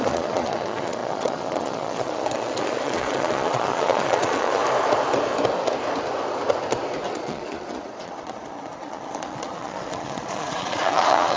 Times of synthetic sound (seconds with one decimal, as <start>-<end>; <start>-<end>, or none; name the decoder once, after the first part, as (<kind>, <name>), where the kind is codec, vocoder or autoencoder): 0.0-4.6 (vocoder, Vocos); 7.1-11.4